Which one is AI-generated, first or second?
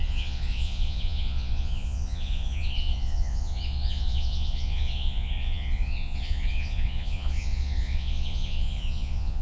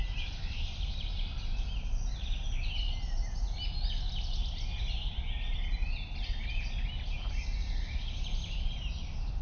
first